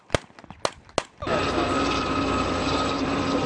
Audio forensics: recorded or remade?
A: recorded